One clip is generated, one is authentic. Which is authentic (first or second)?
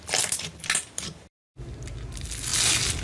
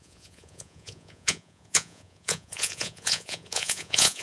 first